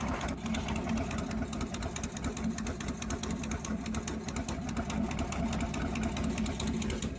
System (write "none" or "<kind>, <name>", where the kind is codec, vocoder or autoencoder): none